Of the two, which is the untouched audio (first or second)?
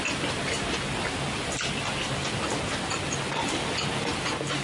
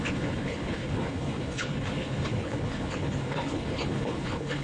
first